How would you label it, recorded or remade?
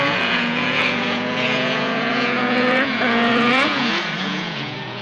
remade